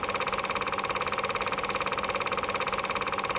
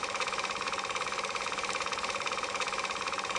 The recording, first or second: first